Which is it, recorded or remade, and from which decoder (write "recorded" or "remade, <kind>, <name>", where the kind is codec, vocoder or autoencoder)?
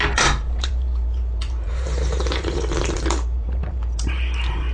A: remade, vocoder, BigVGAN v2